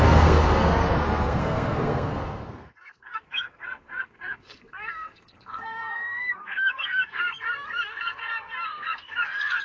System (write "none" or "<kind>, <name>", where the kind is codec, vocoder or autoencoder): codec, SNAC